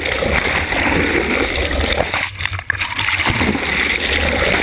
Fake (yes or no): no